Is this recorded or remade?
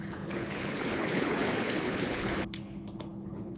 remade